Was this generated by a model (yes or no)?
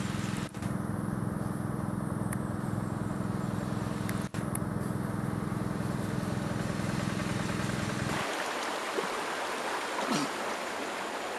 no